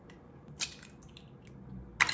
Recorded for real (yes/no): yes